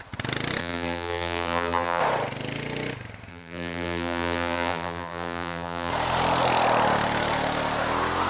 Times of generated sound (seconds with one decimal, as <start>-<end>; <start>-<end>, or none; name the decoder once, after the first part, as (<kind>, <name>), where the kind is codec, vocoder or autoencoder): 0.6-2.0 (vocoder, BigVGAN v2); 3.3-5.9